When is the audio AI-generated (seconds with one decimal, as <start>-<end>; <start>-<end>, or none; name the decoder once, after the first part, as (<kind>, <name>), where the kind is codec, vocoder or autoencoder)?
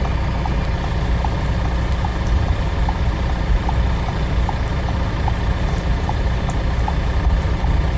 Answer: 2.1-6.9 (vocoder, BigVGAN v2)